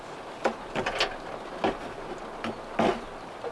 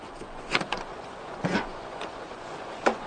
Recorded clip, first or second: first